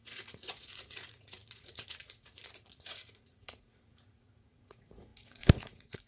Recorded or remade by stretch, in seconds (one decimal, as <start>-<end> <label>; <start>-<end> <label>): 0.0-6.1 remade